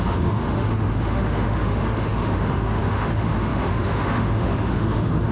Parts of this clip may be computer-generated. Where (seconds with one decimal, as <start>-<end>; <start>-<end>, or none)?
0.0-5.3